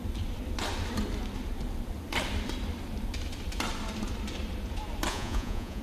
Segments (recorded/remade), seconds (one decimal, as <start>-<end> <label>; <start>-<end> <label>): 0.0-5.1 recorded; 5.1-5.8 remade